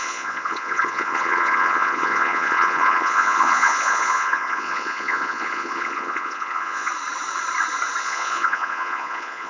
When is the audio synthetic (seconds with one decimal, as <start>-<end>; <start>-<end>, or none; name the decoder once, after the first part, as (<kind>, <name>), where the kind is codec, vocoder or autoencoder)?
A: 0.0-6.9 (vocoder, Vocos); 8.0-9.5